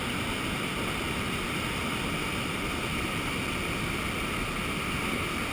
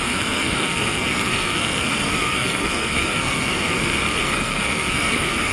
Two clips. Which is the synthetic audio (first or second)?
second